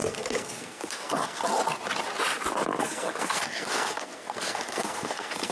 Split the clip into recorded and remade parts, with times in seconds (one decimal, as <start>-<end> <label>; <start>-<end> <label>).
0.0-1.6 remade; 1.6-2.8 recorded; 2.8-5.5 remade